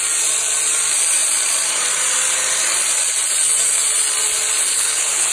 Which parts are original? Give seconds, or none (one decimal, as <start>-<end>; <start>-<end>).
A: 0.0-4.7